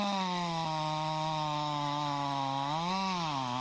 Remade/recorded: remade